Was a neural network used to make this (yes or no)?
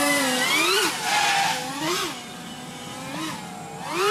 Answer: no